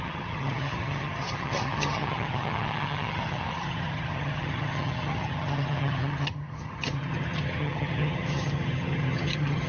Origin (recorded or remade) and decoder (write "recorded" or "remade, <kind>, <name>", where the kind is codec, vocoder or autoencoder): remade, vocoder, HiFi-GAN